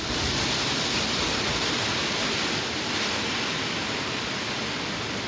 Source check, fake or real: real